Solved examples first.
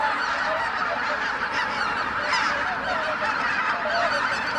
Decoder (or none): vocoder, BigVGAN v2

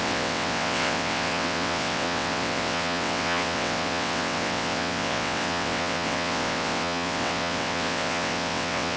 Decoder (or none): vocoder, WaveNeXt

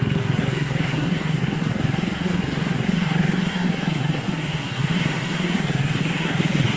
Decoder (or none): codec, SNAC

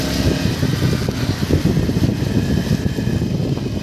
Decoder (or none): none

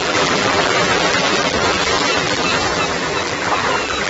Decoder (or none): vocoder, BigVGAN v2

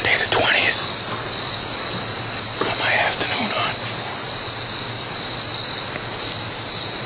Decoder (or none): none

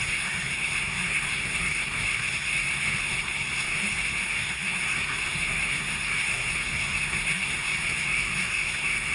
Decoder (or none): codec, SNAC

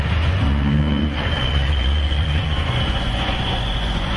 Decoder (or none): vocoder, Vocos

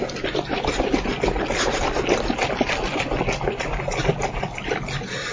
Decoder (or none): none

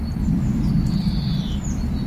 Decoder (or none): none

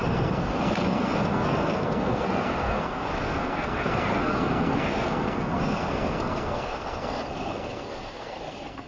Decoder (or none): codec, SNAC